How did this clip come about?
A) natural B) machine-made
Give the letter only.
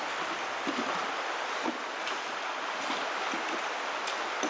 A